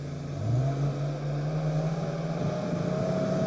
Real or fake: real